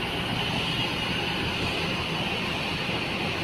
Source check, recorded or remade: recorded